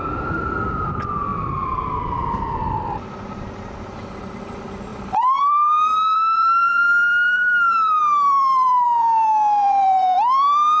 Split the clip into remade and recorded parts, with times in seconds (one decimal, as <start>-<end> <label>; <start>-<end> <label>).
0.0-10.8 remade